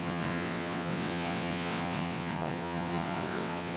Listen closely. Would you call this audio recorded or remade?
remade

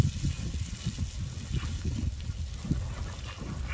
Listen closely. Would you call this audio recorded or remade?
recorded